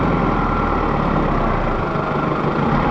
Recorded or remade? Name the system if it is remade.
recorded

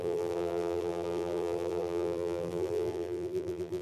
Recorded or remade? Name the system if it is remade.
remade, vocoder, BigVGAN v2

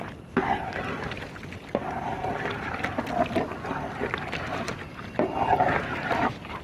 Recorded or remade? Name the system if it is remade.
recorded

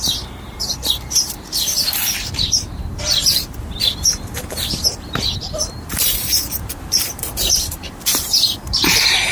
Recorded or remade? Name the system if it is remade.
remade, vocoder, BigVGAN v2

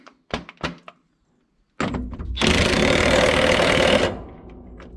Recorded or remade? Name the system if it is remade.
recorded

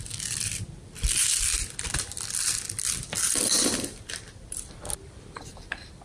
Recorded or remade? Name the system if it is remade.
remade, vocoder, BigVGAN v2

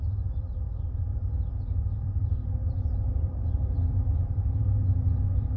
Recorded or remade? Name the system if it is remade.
remade, vocoder, BigVGAN v2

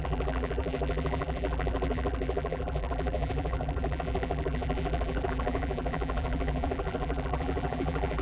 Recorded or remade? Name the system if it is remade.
remade, vocoder, BigVGAN v2